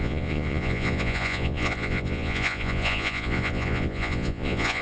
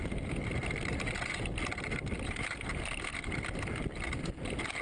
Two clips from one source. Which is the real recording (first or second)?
second